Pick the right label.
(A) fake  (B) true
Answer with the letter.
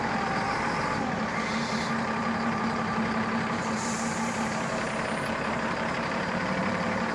A